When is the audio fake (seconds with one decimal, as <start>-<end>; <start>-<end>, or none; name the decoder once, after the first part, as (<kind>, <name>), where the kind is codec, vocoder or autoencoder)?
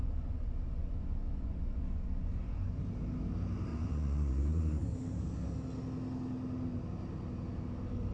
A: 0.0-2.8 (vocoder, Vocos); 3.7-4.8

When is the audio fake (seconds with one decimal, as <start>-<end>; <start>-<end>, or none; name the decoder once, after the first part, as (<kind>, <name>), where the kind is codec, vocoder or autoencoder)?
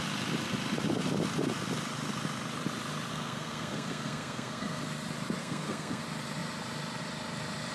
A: 3.1-4.8 (codec, SNAC); 5.4-6.0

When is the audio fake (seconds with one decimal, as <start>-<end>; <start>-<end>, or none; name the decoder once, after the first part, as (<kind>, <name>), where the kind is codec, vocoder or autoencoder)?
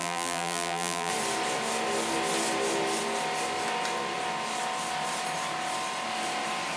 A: 0.0-1.1 (vocoder, BigVGAN v2)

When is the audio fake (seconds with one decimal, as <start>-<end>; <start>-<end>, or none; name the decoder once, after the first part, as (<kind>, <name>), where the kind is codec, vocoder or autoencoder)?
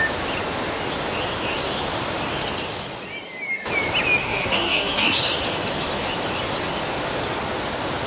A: 4.2-5.2 (codec, SNAC)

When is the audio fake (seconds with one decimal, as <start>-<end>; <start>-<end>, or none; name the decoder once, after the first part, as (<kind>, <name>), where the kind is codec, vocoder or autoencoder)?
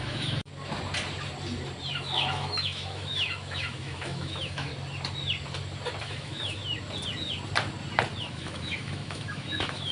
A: 0.0-0.5 (autoencoder, DAC-VAE); 1.9-4.7; 6.0-6.6; 8.2-9.9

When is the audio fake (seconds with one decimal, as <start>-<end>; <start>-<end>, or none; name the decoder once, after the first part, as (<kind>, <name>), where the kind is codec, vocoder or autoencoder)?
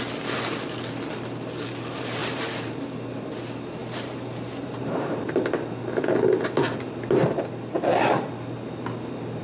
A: 2.2-2.8 (vocoder, BigVGAN v2); 3.8-5.4